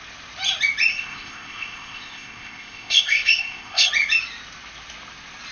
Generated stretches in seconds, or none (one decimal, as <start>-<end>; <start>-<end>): 0.9-3.9